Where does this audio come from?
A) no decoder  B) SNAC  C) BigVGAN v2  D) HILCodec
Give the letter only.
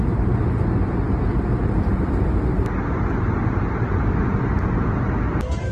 A